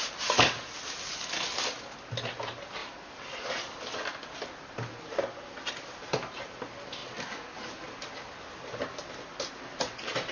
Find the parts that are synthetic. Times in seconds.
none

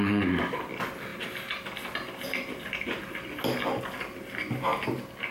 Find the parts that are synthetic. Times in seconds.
none

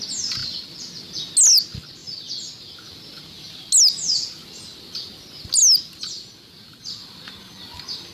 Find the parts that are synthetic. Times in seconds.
0.4-1.1 (vocoder, BigVGAN v2)

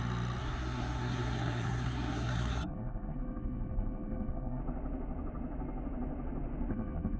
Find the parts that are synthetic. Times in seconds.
0.4-4.6 (codec, SNAC); 6.7-7.2

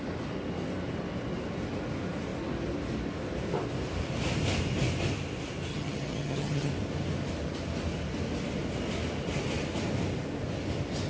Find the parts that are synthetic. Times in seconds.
5.7-6.7 (vocoder, HiFi-GAN)